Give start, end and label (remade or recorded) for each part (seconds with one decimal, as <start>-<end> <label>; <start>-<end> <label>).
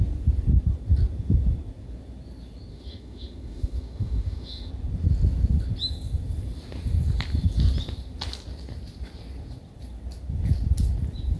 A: 0.0-2.7 recorded; 2.7-4.7 remade; 4.7-11.4 recorded